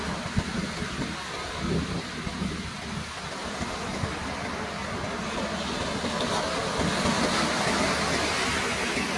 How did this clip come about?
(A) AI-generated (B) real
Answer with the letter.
B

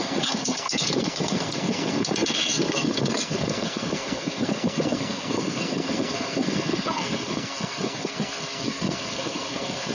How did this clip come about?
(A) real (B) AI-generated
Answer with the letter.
B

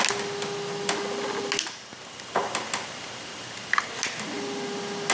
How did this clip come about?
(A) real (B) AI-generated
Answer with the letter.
A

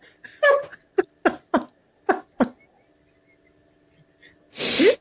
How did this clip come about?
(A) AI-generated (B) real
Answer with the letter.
B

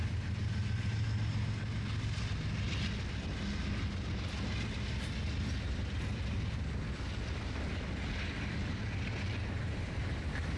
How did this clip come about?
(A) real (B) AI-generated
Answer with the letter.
A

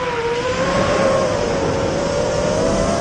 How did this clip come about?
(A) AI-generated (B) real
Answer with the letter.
A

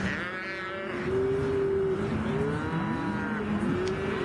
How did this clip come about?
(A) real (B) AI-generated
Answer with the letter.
A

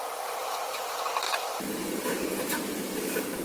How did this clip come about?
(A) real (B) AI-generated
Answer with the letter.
B